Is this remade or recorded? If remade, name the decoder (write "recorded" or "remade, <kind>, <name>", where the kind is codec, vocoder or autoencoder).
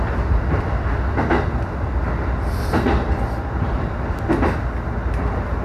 recorded